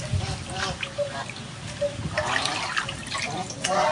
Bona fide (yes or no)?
yes